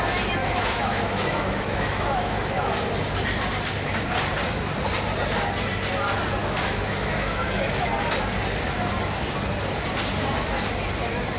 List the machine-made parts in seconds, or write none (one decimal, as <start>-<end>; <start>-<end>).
0.4-2.7; 6.4-7.9